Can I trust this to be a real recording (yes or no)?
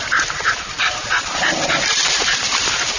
yes